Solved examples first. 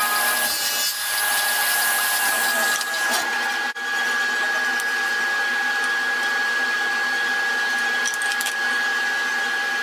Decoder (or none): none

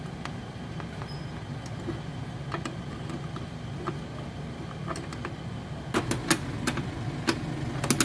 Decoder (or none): none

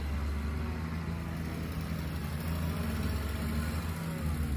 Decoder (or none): none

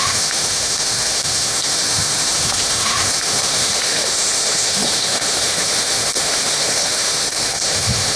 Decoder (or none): autoencoder, DAC-VAE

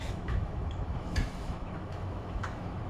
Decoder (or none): autoencoder, DAC-VAE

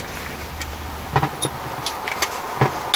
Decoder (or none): none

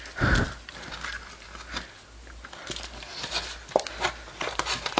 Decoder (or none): none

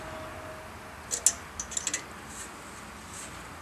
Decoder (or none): none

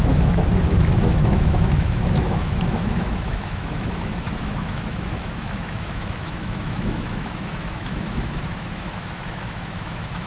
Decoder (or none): autoencoder, DAC-VAE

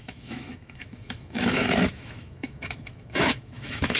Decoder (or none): autoencoder, DAC-VAE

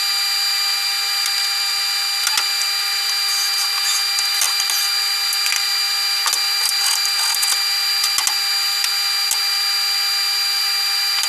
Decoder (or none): none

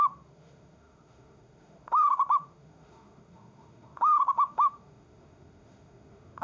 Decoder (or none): autoencoder, DAC-VAE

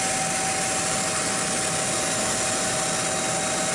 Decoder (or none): none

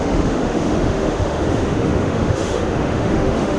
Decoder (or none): autoencoder, DAC-VAE